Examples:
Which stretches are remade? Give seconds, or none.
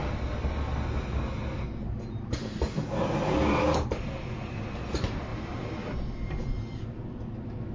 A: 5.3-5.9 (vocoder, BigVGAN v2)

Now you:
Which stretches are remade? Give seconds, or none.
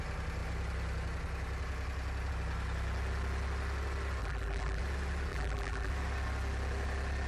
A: 4.2-4.8 (vocoder, BigVGAN v2); 5.3-5.9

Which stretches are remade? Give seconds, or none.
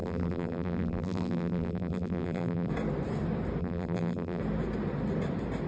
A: 0.0-2.7 (vocoder, BigVGAN v2); 3.6-4.4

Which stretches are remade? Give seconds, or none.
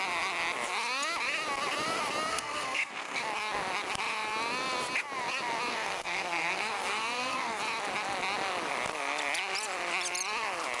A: 2.3-3.2 (codec, SNAC); 5.7-7.6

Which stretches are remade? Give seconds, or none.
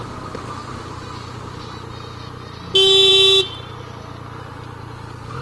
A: none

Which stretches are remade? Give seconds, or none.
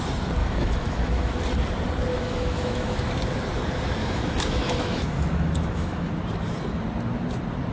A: 0.4-1.4 (autoencoder, DAC-VAE); 2.1-3.1; 4.0-6.1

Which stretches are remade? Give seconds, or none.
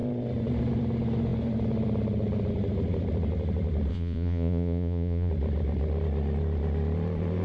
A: 3.9-5.3 (vocoder, Vocos)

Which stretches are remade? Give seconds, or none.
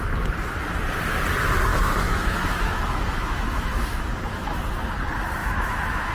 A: 1.7-4.6 (autoencoder, DAC-VAE); 5.4-6.1